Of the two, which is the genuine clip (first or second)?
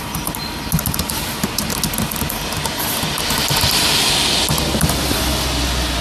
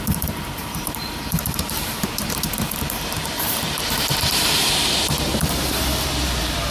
first